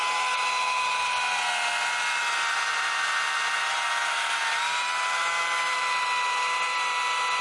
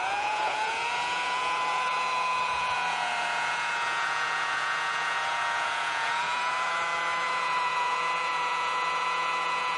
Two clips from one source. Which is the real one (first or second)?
first